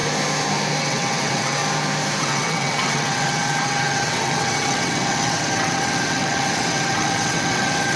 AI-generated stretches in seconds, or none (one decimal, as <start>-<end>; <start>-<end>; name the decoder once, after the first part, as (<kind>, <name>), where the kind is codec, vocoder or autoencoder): 0.8-1.6 (vocoder, WaveNeXt); 2.2-8.0